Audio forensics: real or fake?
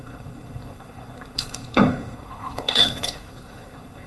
fake